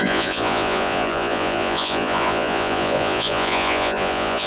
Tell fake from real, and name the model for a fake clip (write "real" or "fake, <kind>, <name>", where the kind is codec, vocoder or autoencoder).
fake, vocoder, Vocos